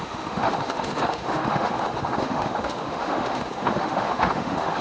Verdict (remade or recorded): remade